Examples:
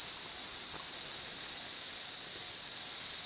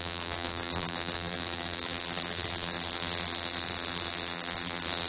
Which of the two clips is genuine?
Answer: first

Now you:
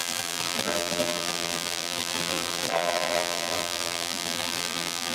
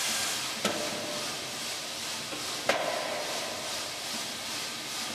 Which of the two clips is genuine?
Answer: second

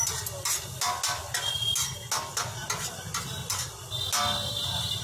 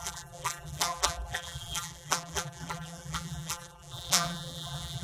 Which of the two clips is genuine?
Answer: first